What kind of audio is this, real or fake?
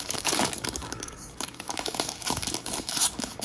fake